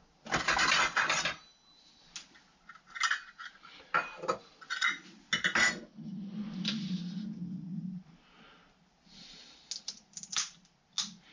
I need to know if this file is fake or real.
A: real